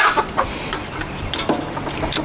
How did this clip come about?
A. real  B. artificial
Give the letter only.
A